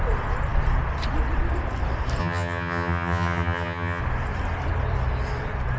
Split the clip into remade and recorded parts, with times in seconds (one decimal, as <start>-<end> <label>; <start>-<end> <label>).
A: 0.0-2.2 recorded; 2.2-4.0 remade; 4.0-5.8 recorded